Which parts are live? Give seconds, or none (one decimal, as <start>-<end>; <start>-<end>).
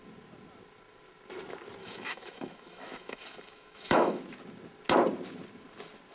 0.0-1.8; 4.2-6.1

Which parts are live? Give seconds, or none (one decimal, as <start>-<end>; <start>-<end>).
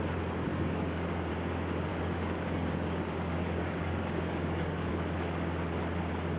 0.0-0.5; 1.3-1.9; 4.9-6.4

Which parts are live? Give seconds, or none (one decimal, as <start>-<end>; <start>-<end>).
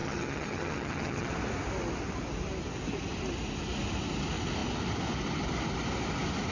1.3-6.5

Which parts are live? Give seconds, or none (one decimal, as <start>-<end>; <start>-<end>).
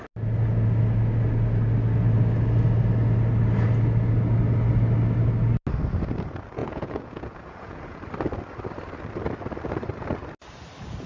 0.0-6.6; 8.0-11.1